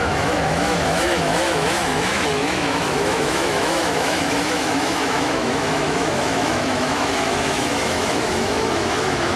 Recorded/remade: remade